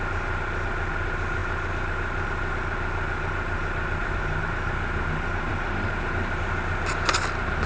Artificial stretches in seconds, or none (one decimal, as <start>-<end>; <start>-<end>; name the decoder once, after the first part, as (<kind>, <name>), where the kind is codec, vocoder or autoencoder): none